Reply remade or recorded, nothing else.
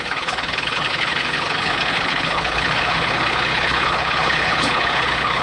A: remade